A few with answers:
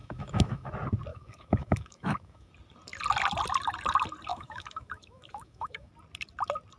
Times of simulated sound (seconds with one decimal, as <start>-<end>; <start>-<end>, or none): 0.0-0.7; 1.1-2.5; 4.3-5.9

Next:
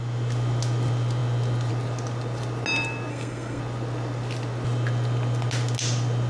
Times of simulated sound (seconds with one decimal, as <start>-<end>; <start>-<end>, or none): 3.1-3.6

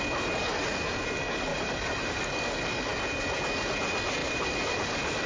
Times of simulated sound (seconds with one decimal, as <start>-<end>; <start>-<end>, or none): 1.5-2.2; 4.2-5.3

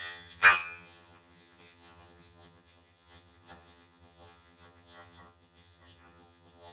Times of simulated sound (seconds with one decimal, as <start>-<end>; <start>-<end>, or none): 0.0-6.7

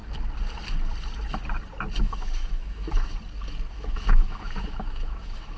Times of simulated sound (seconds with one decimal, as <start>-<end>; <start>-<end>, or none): 2.0-3.1; 3.7-5.6